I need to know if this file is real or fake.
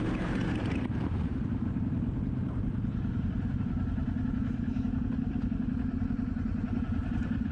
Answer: fake